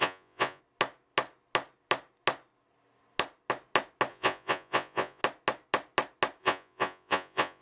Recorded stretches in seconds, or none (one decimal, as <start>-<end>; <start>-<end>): 0.6-4.1; 5.2-6.4